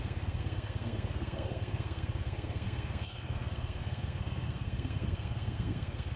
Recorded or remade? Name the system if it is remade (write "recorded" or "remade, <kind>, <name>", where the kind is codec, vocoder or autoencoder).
remade, codec, SNAC